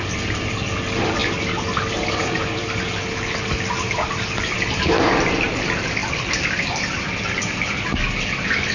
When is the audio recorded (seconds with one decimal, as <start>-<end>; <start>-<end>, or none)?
0.0-8.7